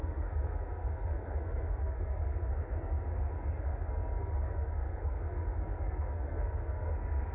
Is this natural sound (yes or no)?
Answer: no